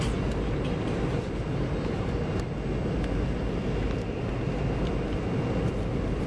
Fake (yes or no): no